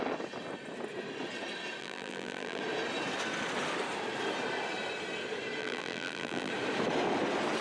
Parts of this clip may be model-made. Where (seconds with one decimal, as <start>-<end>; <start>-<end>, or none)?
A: 1.8-2.6; 5.6-6.5